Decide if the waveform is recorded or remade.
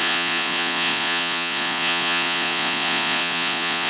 remade